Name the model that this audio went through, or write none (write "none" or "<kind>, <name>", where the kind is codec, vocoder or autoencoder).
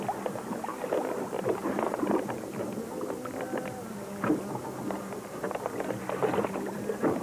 none